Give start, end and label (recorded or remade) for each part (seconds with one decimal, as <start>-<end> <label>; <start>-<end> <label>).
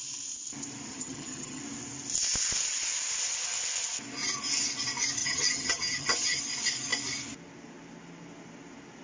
0.0-0.9 recorded; 0.9-1.6 remade; 1.6-5.2 recorded; 5.2-6.4 remade; 6.4-9.0 recorded